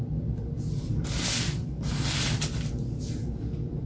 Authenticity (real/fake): real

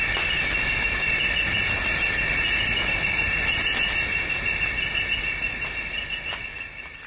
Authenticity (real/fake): real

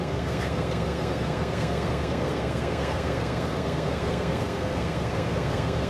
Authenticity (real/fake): fake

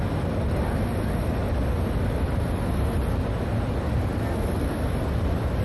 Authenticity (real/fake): real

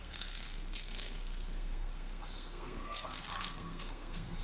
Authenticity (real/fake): fake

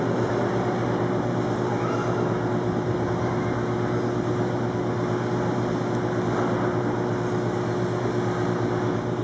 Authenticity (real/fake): real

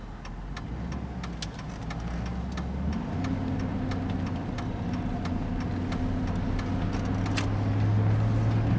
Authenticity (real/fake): real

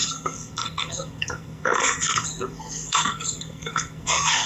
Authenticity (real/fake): fake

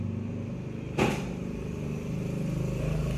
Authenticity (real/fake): real